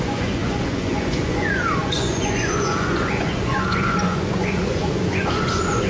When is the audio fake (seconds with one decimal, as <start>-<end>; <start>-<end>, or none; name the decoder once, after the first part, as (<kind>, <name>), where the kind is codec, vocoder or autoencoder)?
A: 0.0-5.9 (vocoder, Vocos)